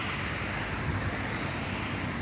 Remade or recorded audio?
recorded